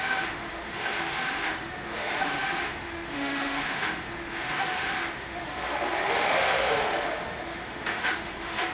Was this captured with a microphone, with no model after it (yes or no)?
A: no